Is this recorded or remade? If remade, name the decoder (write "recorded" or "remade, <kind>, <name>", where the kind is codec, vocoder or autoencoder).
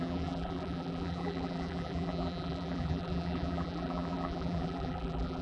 remade, vocoder, BigVGAN v2